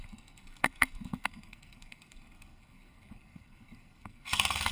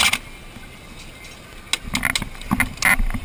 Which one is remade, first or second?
first